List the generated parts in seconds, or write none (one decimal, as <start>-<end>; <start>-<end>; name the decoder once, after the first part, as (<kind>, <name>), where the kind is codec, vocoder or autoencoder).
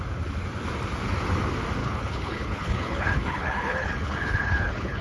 1.8-5.0 (codec, HILCodec)